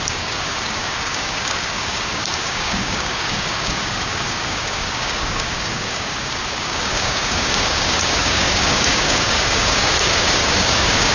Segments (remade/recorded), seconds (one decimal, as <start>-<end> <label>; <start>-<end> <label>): 0.0-11.1 remade